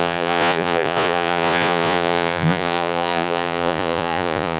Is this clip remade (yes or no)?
yes